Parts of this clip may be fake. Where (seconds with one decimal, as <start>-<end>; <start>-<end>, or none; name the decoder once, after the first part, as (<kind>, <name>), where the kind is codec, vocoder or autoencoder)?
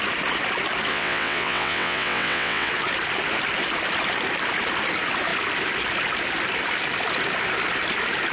0.9-2.7 (vocoder, WaveNeXt)